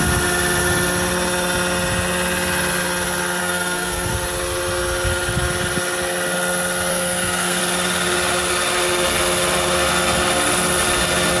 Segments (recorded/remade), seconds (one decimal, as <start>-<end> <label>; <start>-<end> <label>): 0.0-3.4 recorded; 3.4-4.1 remade; 4.1-6.9 recorded; 6.9-7.6 remade; 7.6-11.4 recorded